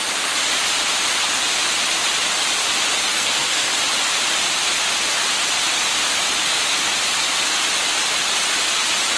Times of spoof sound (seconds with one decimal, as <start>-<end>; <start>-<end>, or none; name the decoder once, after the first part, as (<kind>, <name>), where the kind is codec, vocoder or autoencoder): 3.1-3.7 (codec, SNAC)